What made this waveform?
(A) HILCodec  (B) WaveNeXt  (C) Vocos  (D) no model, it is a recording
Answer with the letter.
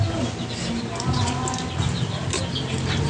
D